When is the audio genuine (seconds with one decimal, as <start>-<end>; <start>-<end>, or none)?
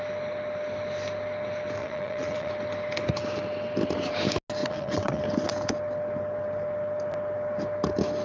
0.0-1.8; 2.5-4.6; 5.2-8.2